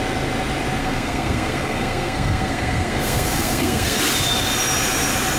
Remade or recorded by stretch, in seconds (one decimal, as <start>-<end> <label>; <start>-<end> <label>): 0.0-0.8 recorded; 0.8-4.0 remade; 4.0-5.4 recorded